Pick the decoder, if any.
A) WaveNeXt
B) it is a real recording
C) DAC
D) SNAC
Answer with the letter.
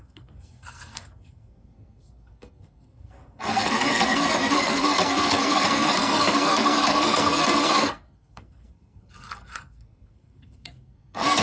D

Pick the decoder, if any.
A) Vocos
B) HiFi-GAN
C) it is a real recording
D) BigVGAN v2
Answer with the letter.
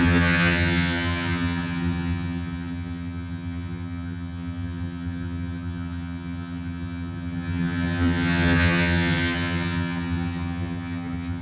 B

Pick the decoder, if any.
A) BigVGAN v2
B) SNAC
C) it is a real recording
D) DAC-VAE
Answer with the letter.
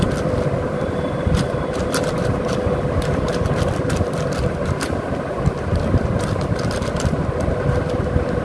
A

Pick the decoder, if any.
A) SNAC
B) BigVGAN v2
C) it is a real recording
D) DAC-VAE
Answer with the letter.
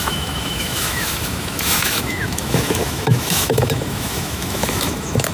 D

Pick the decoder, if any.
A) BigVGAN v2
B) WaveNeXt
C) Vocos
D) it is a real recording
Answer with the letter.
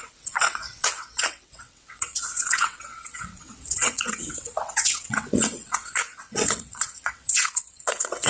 B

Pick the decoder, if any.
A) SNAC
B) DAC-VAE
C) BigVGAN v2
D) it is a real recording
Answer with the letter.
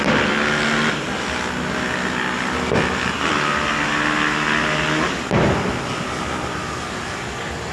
D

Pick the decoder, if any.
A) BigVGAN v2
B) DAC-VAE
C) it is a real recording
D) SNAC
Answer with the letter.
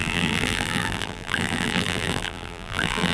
A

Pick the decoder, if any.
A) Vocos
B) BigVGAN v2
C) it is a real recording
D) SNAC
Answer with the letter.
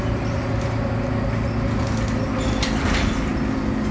C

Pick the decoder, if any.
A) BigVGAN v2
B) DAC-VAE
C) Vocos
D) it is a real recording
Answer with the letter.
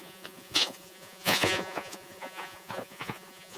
C